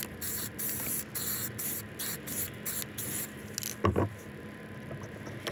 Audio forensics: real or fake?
real